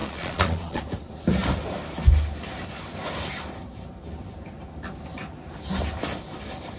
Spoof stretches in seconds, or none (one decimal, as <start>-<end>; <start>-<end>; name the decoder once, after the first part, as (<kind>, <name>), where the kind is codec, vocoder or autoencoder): 0.0-0.8 (vocoder, Vocos)